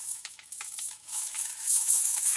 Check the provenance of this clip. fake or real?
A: fake